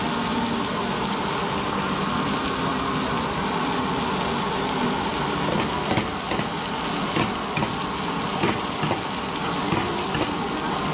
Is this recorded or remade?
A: recorded